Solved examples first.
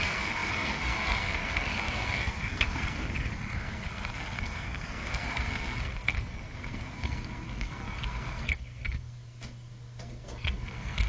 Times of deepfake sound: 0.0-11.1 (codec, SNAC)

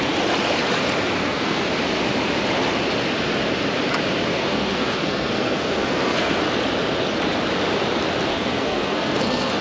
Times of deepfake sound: 1.2-1.7 (codec, SNAC); 4.3-6.4; 8.3-9.6